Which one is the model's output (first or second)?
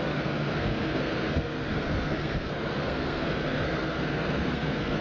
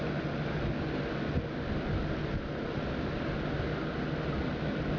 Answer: first